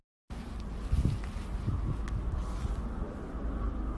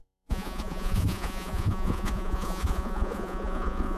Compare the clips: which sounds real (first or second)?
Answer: first